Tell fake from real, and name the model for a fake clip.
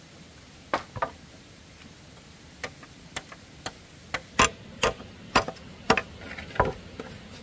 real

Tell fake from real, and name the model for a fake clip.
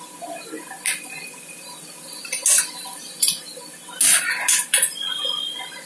real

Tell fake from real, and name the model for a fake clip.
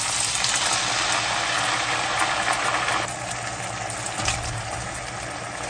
real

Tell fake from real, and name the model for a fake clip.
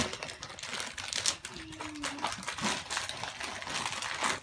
real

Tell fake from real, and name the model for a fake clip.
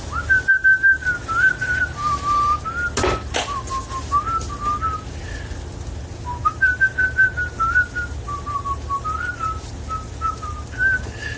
real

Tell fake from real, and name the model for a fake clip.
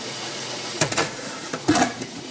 fake, vocoder, Vocos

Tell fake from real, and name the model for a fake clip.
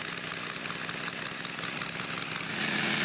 real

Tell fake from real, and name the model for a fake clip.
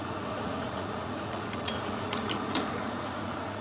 fake, vocoder, Vocos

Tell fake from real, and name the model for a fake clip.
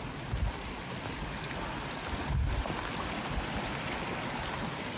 real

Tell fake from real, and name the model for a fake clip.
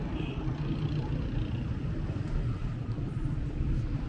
real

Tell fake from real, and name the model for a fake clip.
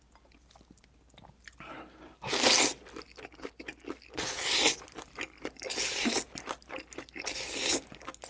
real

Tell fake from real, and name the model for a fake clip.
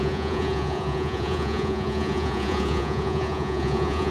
fake, vocoder, Vocos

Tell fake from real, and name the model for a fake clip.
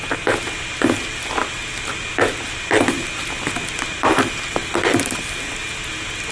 real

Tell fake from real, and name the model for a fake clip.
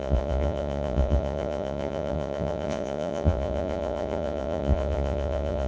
fake, vocoder, Vocos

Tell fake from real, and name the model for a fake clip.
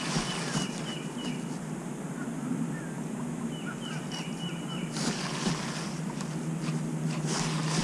real